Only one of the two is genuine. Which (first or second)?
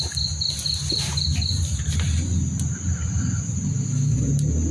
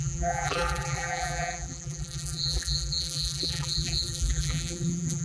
first